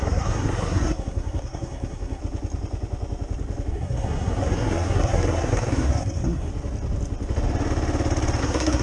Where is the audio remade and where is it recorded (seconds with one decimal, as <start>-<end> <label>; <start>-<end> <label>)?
0.0-2.2 remade; 2.2-3.7 recorded; 3.7-6.5 remade; 6.5-8.4 recorded; 8.4-8.8 remade